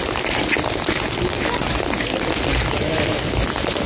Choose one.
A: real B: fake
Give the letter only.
A